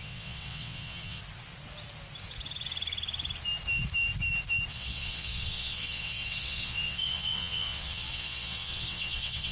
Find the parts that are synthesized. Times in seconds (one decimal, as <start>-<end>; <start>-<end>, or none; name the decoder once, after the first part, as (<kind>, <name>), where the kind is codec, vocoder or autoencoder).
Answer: 0.0-1.2 (vocoder, WaveNeXt); 4.7-9.5